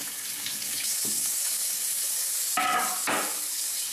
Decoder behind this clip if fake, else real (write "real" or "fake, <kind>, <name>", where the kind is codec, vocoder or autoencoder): fake, codec, DAC